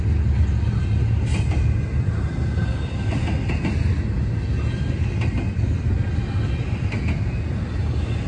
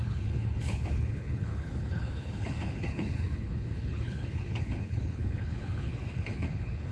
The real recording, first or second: first